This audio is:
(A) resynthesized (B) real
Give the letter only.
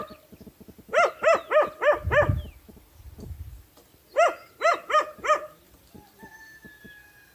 B